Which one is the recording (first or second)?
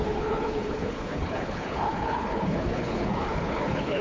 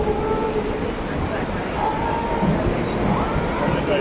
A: second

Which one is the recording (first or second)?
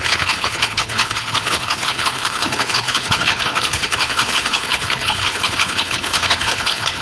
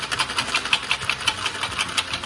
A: second